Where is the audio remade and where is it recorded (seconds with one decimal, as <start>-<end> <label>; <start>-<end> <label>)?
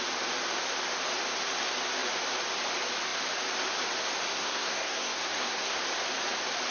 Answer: 0.0-4.3 recorded; 4.3-5.8 remade; 5.8-6.7 recorded